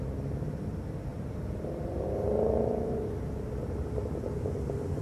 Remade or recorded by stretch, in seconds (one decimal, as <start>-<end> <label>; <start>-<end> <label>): 0.0-1.1 recorded; 1.1-4.1 remade; 4.1-5.0 recorded